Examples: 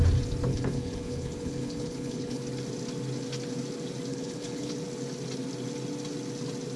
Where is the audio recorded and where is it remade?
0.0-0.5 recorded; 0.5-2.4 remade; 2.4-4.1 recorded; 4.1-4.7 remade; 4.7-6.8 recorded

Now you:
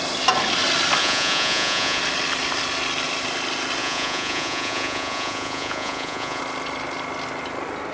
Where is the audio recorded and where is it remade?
0.0-1.0 recorded; 1.0-2.0 remade; 2.0-3.8 recorded; 3.8-6.4 remade; 6.4-7.9 recorded

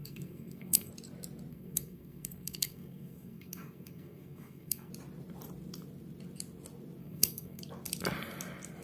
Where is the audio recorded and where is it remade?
0.0-0.9 remade; 0.9-1.5 recorded; 1.5-4.9 remade; 4.9-7.0 recorded; 7.0-7.6 remade; 7.6-8.8 recorded

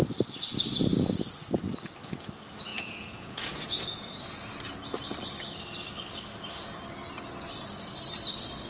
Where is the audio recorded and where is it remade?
0.0-2.7 recorded; 2.7-4.2 remade; 4.2-8.7 recorded

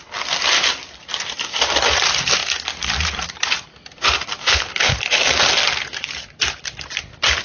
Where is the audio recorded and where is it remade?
0.0-4.4 recorded; 4.4-5.0 remade; 5.0-7.4 recorded

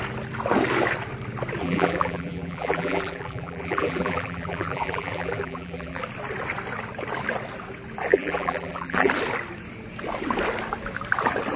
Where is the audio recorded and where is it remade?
0.0-1.6 recorded; 1.6-6.0 remade; 6.0-8.1 recorded; 8.1-9.1 remade; 9.1-11.6 recorded

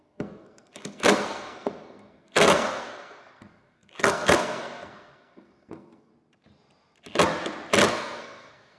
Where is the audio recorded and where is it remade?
0.0-6.1 remade; 6.1-7.9 recorded; 7.9-8.8 remade